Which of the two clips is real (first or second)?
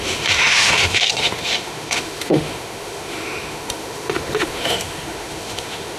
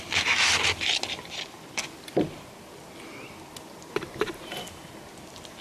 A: second